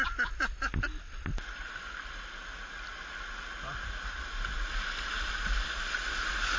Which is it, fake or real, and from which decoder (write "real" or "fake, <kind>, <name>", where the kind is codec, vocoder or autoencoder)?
real